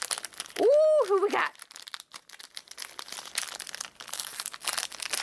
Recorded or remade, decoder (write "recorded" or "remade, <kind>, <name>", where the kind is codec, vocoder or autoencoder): recorded